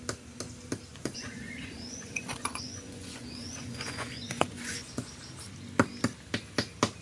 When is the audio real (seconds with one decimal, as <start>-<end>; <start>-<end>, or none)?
0.0-0.9; 5.1-7.0